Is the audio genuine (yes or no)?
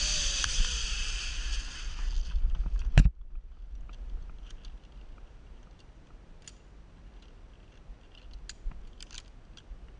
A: yes